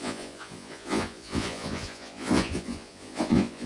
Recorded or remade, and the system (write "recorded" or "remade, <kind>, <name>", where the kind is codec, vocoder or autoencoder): remade, vocoder, Vocos